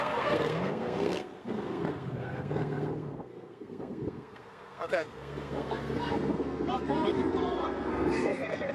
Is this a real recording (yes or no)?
no